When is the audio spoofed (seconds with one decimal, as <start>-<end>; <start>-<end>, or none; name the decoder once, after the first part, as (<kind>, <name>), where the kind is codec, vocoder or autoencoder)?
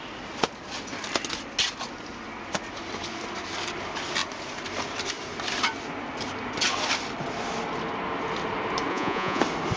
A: 8.9-9.4 (vocoder, Vocos)